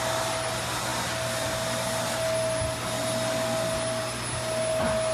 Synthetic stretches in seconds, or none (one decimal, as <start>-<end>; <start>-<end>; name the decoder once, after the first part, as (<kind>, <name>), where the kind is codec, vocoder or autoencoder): none